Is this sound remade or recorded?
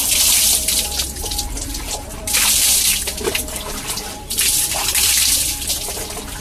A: remade